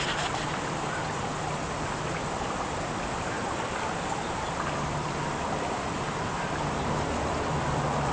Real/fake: fake